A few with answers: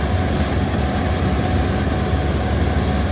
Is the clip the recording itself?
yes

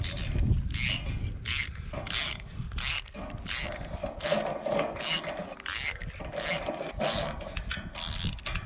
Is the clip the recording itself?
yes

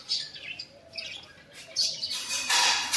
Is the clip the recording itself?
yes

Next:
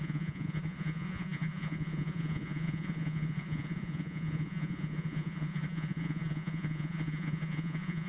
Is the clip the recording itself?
no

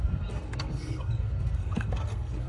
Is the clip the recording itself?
no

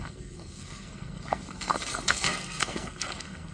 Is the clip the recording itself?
no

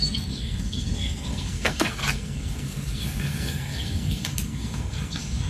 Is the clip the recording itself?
no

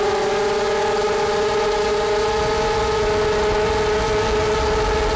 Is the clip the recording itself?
yes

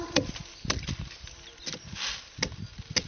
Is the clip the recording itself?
yes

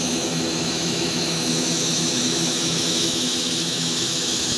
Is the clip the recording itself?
no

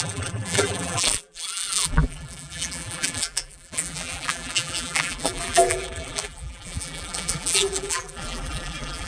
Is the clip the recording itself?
no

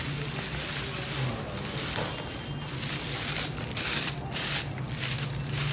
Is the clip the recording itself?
yes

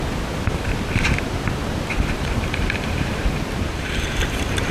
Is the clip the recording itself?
no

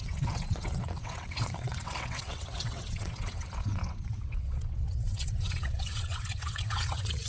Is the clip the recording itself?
no